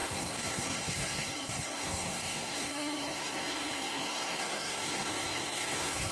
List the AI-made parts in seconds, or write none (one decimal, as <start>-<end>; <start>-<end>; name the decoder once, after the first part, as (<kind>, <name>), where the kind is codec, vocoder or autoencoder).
0.0-6.1 (codec, SNAC)